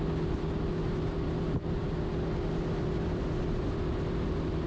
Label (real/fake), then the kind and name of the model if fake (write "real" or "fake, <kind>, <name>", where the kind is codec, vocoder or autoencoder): real